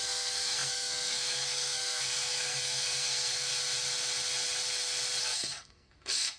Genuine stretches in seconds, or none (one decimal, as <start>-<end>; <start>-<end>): 3.5-5.2